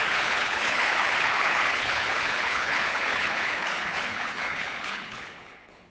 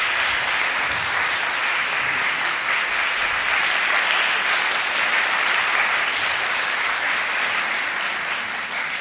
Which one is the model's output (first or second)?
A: first